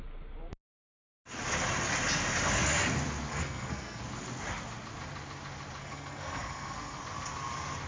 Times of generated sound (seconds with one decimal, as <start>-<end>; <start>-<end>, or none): 3.3-4.0; 5.8-7.0